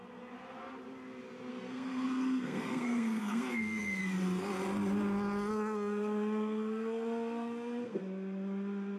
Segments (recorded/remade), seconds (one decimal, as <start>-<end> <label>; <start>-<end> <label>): 0.0-1.5 recorded; 1.5-4.0 remade; 4.0-5.5 recorded; 5.5-8.0 remade; 8.0-9.0 recorded